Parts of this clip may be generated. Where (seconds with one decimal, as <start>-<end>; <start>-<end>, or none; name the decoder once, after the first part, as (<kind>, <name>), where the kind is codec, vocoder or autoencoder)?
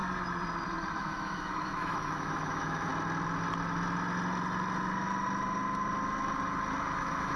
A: 1.0-2.9 (autoencoder, DAC-VAE); 7.0-7.4